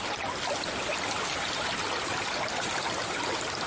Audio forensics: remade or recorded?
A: recorded